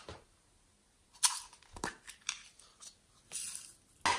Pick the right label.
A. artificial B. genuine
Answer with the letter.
B